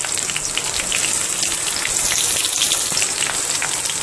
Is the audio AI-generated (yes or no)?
no